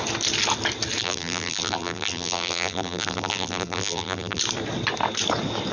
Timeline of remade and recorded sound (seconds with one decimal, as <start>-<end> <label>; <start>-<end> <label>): 0.0-1.0 recorded; 1.0-4.4 remade; 4.4-5.7 recorded